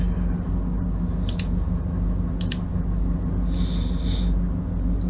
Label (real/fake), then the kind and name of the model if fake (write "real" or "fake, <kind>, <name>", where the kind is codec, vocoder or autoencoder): real